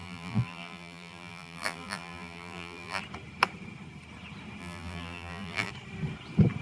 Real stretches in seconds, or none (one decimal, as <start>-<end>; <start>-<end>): 3.0-4.6; 5.7-6.6